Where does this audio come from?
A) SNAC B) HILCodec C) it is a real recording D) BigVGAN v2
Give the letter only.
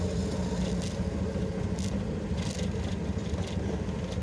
C